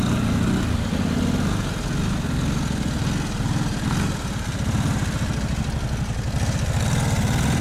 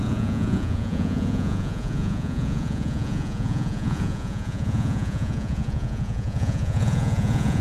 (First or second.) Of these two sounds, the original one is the first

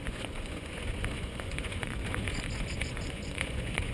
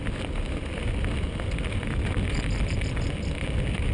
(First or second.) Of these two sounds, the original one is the second